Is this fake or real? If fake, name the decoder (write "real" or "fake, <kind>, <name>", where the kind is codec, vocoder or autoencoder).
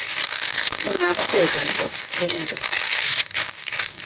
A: fake, codec, DAC